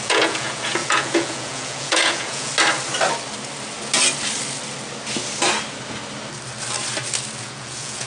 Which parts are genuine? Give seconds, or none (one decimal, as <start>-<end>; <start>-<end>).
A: 2.5-7.4